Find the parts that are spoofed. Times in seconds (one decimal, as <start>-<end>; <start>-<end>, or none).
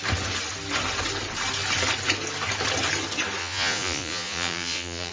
3.4-5.1